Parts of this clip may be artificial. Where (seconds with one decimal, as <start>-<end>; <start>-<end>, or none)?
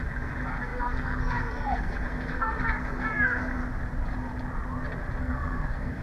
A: 0.0-3.6; 5.2-6.0